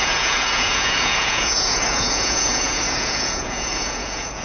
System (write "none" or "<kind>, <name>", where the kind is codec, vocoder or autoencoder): vocoder, Vocos